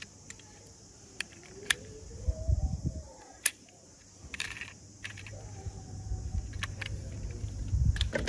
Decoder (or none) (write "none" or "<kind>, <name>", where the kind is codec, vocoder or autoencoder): vocoder, BigVGAN v2